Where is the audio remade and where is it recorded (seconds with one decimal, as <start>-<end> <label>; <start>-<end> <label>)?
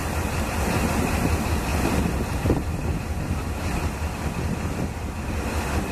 0.0-5.9 recorded